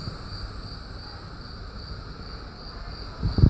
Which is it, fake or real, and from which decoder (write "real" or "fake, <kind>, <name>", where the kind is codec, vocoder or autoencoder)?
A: real